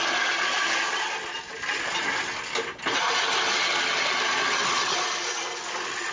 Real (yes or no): yes